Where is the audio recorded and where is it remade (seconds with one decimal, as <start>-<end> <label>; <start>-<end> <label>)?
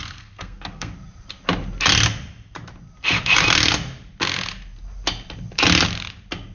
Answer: 0.0-0.9 remade; 0.9-6.5 recorded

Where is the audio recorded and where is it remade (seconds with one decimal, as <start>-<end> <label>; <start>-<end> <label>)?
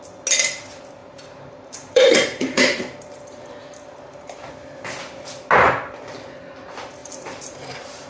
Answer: 0.0-1.0 recorded; 1.0-4.5 remade; 4.5-7.0 recorded; 7.0-8.1 remade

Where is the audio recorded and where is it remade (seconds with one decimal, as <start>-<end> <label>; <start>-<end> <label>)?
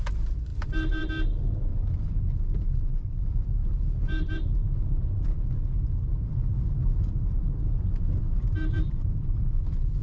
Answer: 0.0-0.5 recorded; 0.5-1.1 remade; 1.1-1.7 recorded; 1.7-5.5 remade; 5.5-6.1 recorded; 6.1-10.0 remade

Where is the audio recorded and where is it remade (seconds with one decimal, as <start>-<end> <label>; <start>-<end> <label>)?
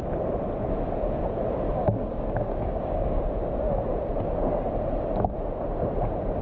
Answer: 0.0-1.8 recorded; 1.8-3.2 remade; 3.2-6.4 recorded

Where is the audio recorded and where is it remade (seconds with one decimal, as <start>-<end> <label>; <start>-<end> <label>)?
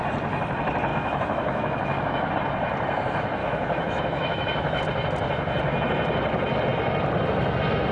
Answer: 0.0-0.9 recorded; 0.9-2.3 remade; 2.3-3.4 recorded; 3.4-4.8 remade; 4.8-7.9 recorded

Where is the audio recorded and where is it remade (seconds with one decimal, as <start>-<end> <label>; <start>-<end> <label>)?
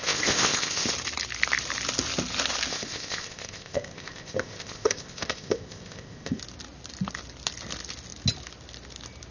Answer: 0.0-0.9 remade; 0.9-2.7 recorded; 2.7-6.4 remade; 6.4-9.3 recorded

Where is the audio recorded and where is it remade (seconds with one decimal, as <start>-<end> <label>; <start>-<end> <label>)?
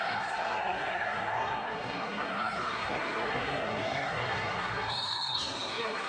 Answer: 0.0-6.1 remade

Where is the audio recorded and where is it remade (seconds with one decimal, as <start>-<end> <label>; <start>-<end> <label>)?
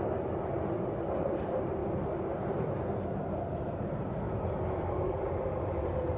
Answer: 0.0-6.2 recorded